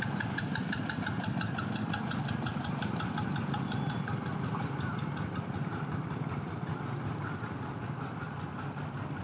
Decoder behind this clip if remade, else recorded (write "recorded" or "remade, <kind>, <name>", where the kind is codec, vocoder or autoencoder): remade, vocoder, BigVGAN v2